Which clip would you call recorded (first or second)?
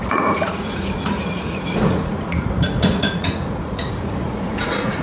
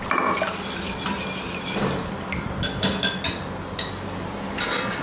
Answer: second